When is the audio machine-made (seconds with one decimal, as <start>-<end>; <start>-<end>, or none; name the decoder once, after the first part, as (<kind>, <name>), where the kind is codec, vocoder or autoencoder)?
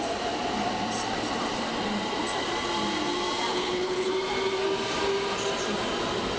3.5-4.1 (codec, HILCodec)